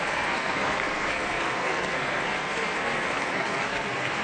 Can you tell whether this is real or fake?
fake